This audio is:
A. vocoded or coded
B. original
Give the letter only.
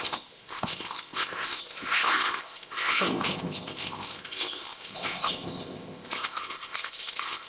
A